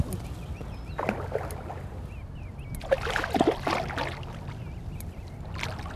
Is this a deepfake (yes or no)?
no